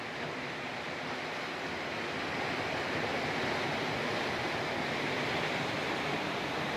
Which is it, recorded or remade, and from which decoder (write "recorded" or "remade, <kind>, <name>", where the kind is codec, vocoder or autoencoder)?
recorded